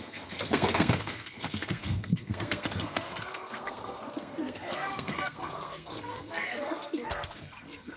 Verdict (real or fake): fake